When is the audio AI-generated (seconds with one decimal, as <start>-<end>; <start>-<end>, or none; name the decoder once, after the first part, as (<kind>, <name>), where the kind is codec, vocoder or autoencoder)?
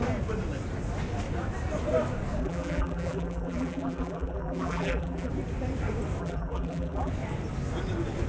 2.4-5.3 (vocoder, BigVGAN v2); 6.2-7.1